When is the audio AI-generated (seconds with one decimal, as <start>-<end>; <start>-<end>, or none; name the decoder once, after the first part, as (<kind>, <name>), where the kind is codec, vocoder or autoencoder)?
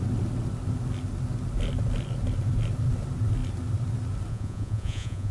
4.3-5.3 (vocoder, Vocos)